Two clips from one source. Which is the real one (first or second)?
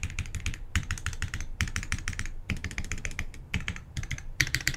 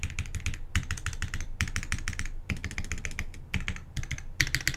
second